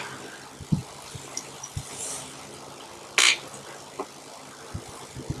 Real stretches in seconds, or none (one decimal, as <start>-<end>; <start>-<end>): 0.0-5.4

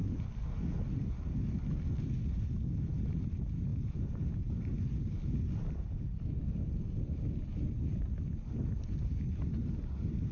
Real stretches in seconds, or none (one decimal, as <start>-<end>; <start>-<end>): 0.0-3.7; 4.5-10.3

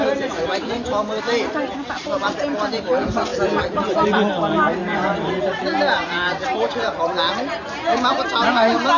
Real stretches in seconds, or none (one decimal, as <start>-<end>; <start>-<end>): 0.0-9.0

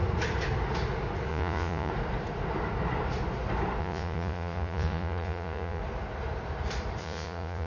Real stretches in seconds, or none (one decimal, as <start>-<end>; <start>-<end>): 0.0-1.3; 1.9-3.8; 5.8-7.0

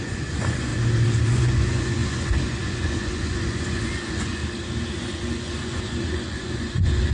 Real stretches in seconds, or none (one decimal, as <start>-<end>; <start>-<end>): 0.7-1.3; 4.4-5.0

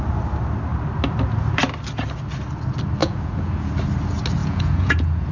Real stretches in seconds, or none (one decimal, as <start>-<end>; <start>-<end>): 0.0-3.0; 3.7-4.4

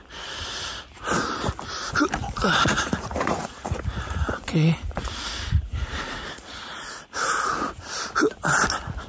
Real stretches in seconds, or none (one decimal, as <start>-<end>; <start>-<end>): 0.0-2.2; 7.2-9.1

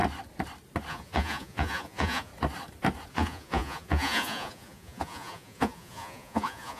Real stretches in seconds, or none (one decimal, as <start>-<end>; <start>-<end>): 0.0-0.9; 2.3-3.1